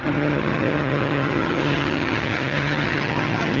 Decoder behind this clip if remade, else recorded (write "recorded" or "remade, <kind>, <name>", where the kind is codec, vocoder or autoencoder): remade, vocoder, HiFi-GAN